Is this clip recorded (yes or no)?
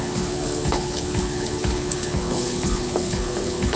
no